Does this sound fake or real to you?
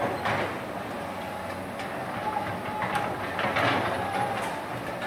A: real